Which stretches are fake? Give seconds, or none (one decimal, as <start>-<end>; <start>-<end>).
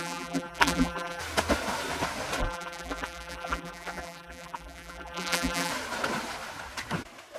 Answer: 0.0-1.2; 2.4-5.7